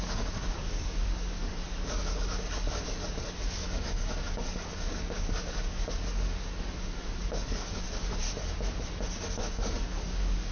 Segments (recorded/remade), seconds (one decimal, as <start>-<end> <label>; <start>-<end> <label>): 0.0-8.2 remade; 8.2-9.3 recorded; 9.3-10.5 remade